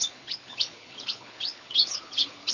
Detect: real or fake fake